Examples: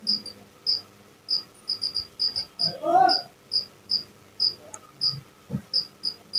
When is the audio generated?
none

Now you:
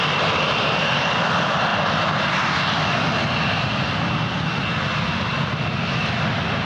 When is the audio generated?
none

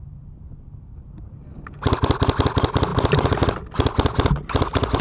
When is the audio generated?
none

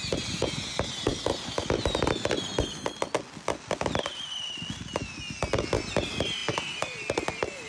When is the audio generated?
none